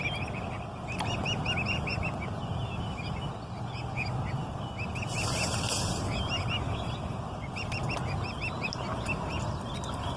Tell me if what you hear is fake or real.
real